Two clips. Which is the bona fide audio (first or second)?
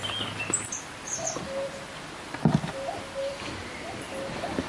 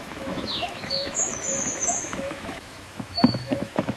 first